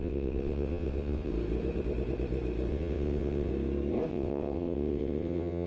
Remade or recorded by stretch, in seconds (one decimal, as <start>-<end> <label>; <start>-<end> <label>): 0.0-1.3 remade; 1.3-2.7 recorded; 2.7-3.5 remade; 3.5-4.1 recorded; 4.1-5.7 remade